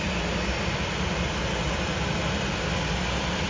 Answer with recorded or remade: remade